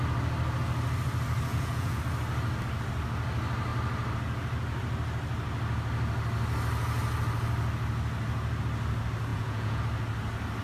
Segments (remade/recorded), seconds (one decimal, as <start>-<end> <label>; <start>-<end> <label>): 0.0-1.5 recorded; 1.5-2.0 remade; 2.0-9.3 recorded; 9.3-9.8 remade; 9.8-10.6 recorded